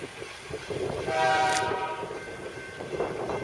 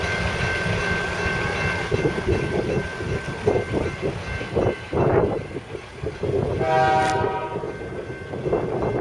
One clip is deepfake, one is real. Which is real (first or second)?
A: second